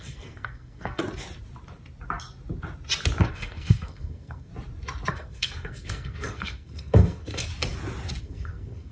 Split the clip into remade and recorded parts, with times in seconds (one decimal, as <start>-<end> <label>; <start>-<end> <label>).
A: 0.0-1.0 remade; 1.0-3.3 recorded; 3.3-4.5 remade; 4.5-5.1 recorded; 5.1-7.5 remade; 7.5-8.2 recorded; 8.2-8.9 remade